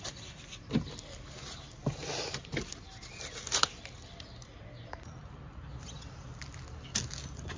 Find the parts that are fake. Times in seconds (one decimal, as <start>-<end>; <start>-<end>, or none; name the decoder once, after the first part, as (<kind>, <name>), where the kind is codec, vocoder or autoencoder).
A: none